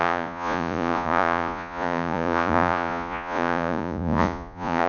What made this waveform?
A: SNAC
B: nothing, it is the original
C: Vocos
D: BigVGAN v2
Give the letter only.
C